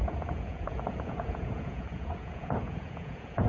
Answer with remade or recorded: remade